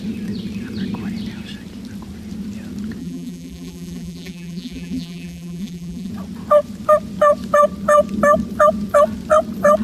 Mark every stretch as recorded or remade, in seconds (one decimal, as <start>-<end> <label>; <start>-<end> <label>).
0.0-3.0 recorded; 3.0-6.1 remade; 6.1-9.8 recorded